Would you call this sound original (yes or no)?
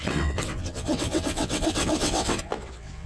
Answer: no